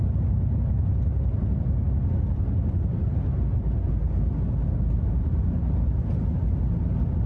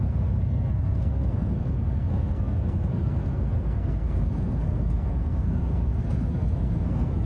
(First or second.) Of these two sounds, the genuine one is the first